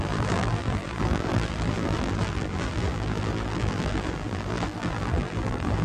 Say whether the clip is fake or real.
fake